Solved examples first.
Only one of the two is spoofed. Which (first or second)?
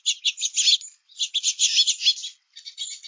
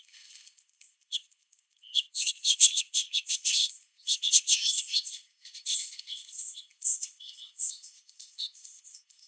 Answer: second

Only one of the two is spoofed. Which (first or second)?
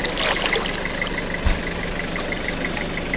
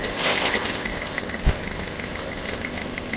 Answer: second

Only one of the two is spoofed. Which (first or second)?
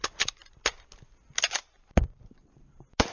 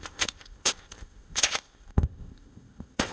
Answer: second